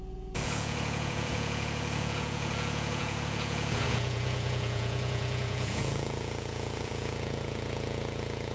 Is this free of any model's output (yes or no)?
no